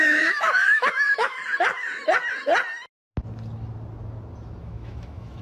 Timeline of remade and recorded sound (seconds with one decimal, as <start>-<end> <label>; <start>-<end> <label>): 0.0-1.4 remade; 1.4-4.6 recorded; 4.6-5.4 remade